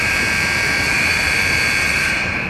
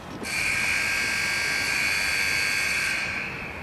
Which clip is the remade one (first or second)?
first